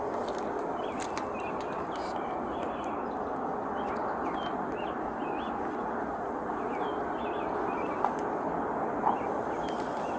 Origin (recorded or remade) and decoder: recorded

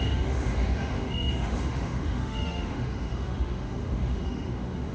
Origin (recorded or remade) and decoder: remade, autoencoder, DAC-VAE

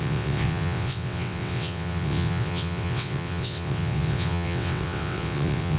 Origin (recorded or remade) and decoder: remade, vocoder, WaveNeXt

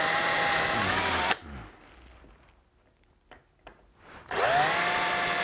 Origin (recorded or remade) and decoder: recorded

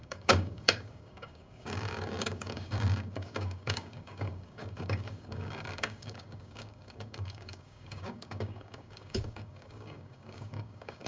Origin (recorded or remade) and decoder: remade, codec, DAC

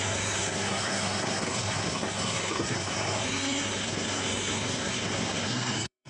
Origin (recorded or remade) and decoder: remade, codec, SNAC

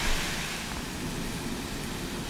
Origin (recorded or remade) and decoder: recorded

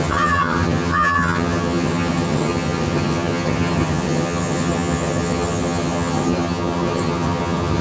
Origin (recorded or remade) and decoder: remade, vocoder, HiFi-GAN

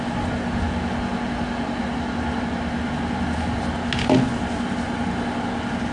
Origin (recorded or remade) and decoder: recorded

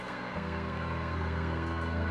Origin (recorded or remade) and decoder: remade, codec, SNAC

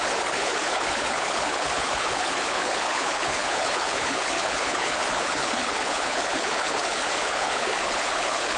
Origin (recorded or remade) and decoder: remade, codec, HILCodec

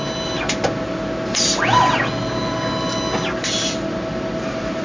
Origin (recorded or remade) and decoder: recorded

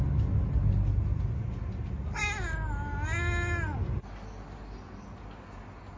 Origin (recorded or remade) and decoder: recorded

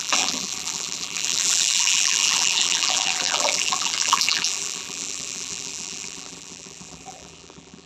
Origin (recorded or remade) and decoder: remade, vocoder, BigVGAN v2